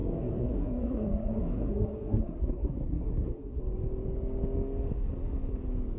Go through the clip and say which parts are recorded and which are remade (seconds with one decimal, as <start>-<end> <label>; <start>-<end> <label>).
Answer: 0.0-3.6 remade; 3.6-6.0 recorded